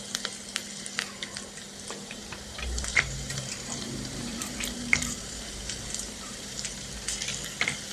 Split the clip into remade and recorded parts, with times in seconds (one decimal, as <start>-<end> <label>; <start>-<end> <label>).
0.0-2.2 recorded; 2.2-6.9 remade; 6.9-7.9 recorded